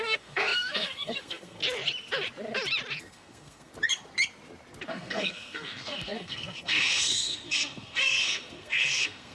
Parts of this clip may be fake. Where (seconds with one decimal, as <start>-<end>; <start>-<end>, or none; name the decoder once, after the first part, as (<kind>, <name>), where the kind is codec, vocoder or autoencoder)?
0.0-1.6 (codec, SNAC); 3.0-3.7; 4.9-9.3